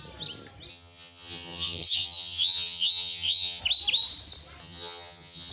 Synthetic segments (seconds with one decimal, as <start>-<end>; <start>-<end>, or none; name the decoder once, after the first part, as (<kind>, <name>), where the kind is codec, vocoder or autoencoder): 0.7-3.6 (vocoder, HiFi-GAN); 4.6-5.5